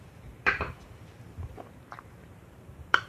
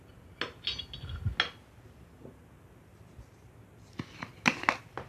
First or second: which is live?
second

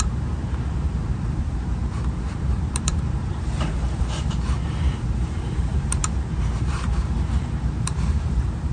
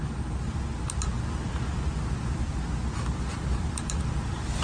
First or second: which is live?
second